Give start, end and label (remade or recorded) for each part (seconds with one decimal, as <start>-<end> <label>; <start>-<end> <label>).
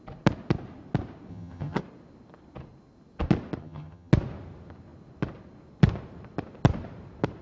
0.0-1.3 recorded; 1.3-1.8 remade; 1.8-3.6 recorded; 3.6-4.1 remade; 4.1-7.4 recorded